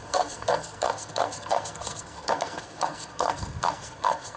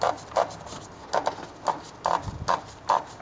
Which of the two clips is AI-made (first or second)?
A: first